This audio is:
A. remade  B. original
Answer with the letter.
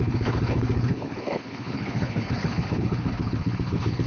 A